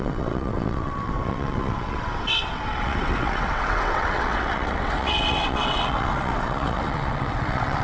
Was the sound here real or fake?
fake